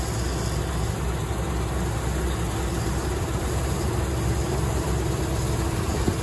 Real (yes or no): yes